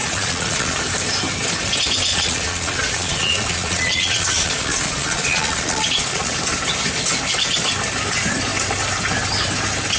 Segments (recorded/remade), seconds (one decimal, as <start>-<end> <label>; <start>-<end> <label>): 0.0-0.8 remade; 0.8-2.1 recorded; 2.1-6.3 remade; 6.3-10.0 recorded